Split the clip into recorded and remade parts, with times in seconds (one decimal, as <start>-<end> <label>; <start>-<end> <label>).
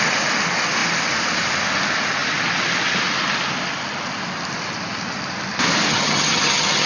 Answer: 0.0-5.9 recorded; 5.9-6.9 remade